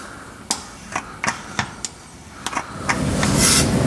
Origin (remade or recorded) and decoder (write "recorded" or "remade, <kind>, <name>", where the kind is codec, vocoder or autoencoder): recorded